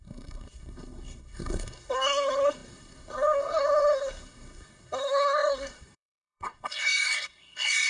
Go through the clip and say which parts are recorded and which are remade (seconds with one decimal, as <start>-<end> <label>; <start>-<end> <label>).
0.0-7.9 remade